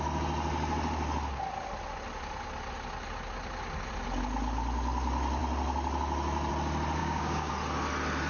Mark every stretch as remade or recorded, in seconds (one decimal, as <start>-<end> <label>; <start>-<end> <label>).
0.0-7.0 recorded; 7.0-7.5 remade; 7.5-8.3 recorded